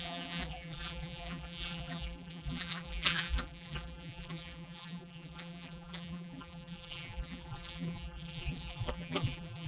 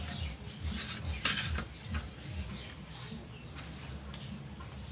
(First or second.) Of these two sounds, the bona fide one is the second